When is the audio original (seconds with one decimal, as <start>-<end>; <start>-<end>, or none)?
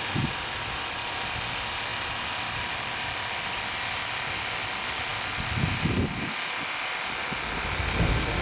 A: none